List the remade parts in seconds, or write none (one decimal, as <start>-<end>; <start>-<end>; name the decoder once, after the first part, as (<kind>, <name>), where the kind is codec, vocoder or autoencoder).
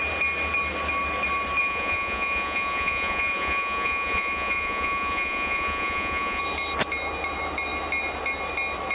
1.6-6.4 (vocoder, Vocos)